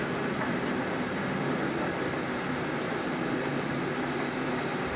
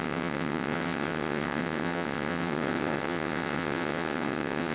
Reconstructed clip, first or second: second